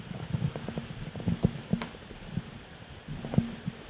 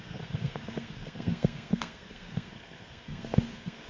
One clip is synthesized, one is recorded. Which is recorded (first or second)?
first